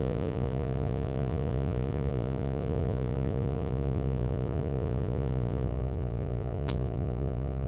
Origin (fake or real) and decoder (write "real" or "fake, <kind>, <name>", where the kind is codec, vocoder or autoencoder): fake, vocoder, Vocos